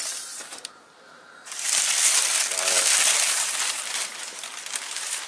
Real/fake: real